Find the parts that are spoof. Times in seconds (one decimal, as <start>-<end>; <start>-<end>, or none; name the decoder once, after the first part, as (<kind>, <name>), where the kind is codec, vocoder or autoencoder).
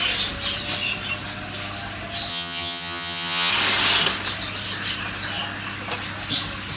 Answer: 2.3-3.5 (vocoder, HiFi-GAN)